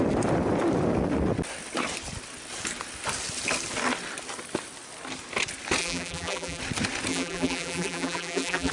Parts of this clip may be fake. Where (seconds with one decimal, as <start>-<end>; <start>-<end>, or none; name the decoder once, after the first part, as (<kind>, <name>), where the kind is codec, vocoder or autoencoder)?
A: 5.8-6.6 (vocoder, BigVGAN v2); 7.1-8.7

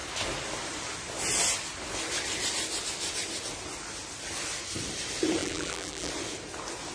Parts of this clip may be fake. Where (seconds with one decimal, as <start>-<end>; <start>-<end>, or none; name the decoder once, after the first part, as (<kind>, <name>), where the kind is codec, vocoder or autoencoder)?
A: 5.4-6.1 (vocoder, BigVGAN v2)